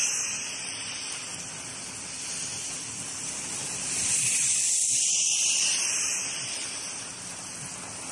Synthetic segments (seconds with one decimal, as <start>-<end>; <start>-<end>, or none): 0.0-0.7; 2.5-7.0